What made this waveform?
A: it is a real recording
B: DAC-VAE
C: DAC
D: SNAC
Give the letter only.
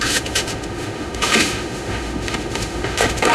B